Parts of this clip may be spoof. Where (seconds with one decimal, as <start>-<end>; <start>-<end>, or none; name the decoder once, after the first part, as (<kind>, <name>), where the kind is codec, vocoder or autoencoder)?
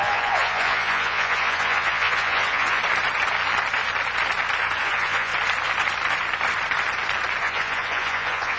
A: 0.0-2.8 (vocoder, Vocos); 4.8-5.3; 7.4-8.6